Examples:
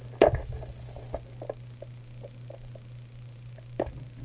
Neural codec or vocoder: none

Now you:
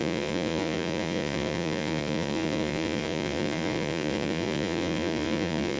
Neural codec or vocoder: vocoder, Vocos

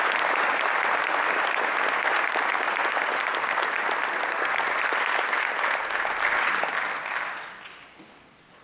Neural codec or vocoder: none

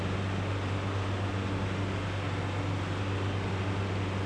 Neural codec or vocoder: none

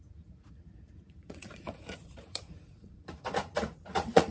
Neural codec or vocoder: vocoder, Vocos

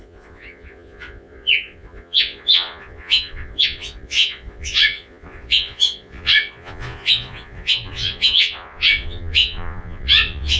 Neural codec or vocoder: vocoder, Vocos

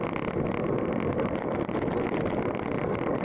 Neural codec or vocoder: none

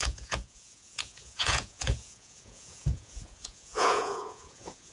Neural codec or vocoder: vocoder, Vocos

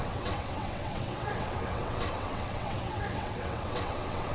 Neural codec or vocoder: vocoder, WaveNeXt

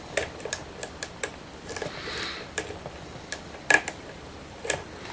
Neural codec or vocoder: vocoder, BigVGAN v2